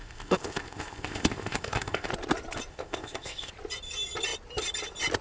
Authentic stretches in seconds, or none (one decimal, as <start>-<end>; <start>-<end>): 2.1-2.7; 3.5-5.2